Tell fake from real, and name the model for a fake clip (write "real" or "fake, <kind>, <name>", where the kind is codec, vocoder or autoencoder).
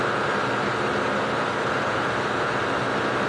real